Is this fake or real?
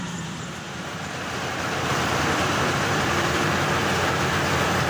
fake